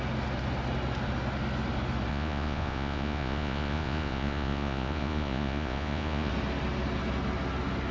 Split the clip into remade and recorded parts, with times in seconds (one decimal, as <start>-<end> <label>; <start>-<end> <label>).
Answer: 0.0-2.1 recorded; 2.1-6.3 remade; 6.3-7.9 recorded